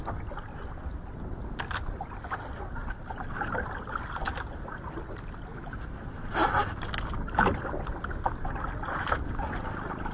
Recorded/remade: recorded